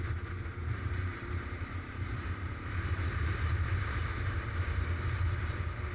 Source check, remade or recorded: remade